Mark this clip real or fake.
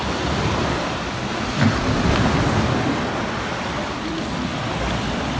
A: real